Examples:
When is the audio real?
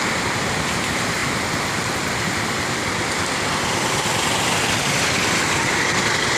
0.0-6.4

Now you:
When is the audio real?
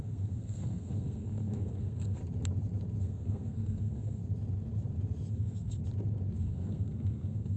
2.2-3.0; 4.2-5.3; 5.8-6.4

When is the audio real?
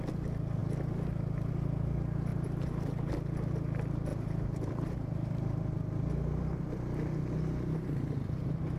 0.0-2.3; 3.1-4.1; 5.4-8.8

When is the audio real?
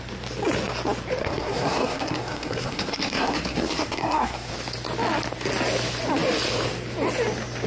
0.0-1.2; 4.5-7.7